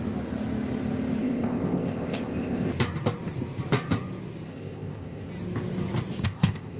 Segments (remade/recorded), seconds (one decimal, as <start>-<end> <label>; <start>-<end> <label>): 0.0-1.2 recorded; 1.2-2.7 remade; 2.7-4.5 recorded; 4.5-5.3 remade; 5.3-6.2 recorded; 6.2-6.8 remade